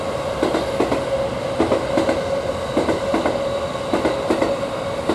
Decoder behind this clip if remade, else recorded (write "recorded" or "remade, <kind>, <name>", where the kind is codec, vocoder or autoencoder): recorded